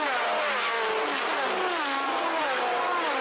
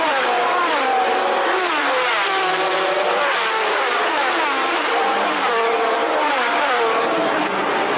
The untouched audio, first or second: first